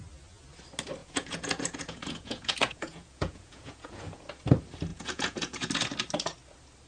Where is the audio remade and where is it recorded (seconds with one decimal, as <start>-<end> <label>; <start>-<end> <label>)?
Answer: 0.0-1.0 recorded; 1.0-4.2 remade; 4.2-4.9 recorded; 4.9-5.7 remade; 5.7-6.9 recorded